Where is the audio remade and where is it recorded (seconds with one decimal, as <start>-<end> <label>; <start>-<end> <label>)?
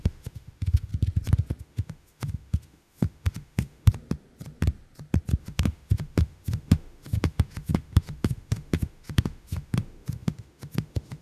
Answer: 0.0-0.9 remade; 0.9-1.6 recorded; 1.6-3.9 remade; 3.9-5.4 recorded; 5.4-11.2 remade